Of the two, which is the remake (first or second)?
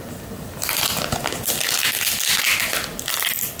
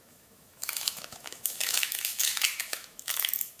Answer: second